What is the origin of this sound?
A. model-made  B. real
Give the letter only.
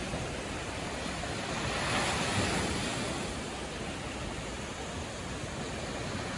B